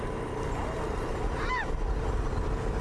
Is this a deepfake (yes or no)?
no